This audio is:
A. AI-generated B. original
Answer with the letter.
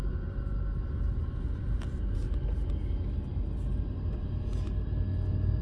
B